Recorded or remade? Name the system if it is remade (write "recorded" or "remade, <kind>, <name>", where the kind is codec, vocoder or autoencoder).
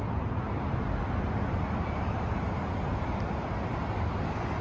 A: recorded